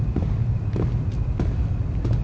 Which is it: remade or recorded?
recorded